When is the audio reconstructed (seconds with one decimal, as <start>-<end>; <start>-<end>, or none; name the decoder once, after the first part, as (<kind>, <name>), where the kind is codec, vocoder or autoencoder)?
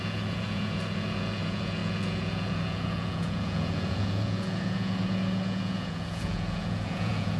0.0-7.4 (vocoder, Vocos)